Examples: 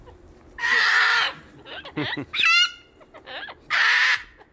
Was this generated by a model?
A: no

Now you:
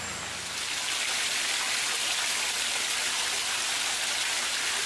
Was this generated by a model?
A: no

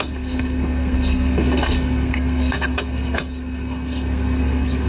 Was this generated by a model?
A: yes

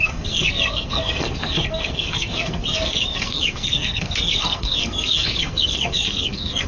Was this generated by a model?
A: yes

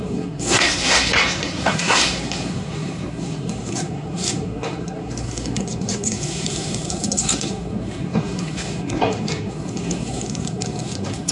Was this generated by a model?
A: yes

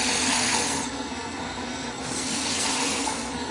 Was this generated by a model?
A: yes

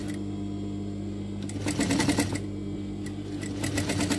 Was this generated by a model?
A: no